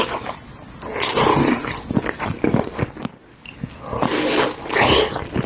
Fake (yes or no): no